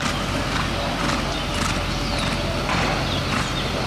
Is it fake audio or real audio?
real